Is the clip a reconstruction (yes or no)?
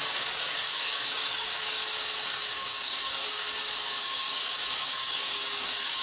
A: yes